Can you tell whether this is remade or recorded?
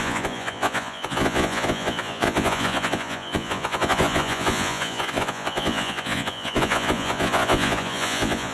remade